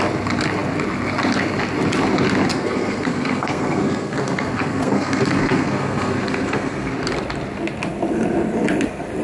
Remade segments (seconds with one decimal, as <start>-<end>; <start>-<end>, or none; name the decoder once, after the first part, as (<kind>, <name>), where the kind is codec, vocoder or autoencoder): 2.5-6.9 (codec, SNAC)

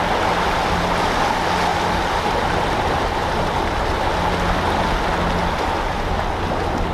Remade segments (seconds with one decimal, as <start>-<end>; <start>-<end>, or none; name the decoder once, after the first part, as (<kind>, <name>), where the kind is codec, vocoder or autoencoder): none